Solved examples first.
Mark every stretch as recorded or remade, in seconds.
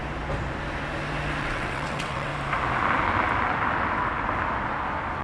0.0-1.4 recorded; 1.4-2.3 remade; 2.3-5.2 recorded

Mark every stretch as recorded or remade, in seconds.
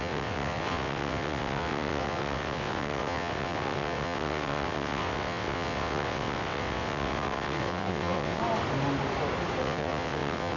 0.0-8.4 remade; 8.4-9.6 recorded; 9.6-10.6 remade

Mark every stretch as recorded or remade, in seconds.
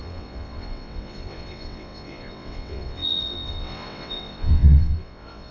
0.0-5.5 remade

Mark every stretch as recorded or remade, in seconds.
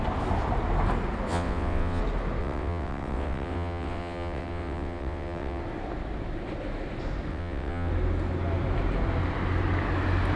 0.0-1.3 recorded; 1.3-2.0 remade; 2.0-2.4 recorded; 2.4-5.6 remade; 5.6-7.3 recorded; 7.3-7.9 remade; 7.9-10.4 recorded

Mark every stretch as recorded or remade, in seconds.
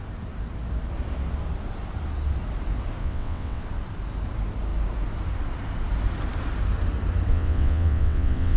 0.0-3.0 recorded; 3.0-3.6 remade; 3.6-7.3 recorded; 7.3-8.6 remade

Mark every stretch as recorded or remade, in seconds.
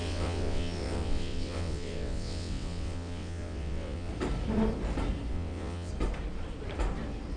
0.0-4.1 remade; 4.1-5.3 recorded; 5.3-5.9 remade; 5.9-7.4 recorded